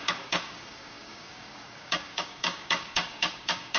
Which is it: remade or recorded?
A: remade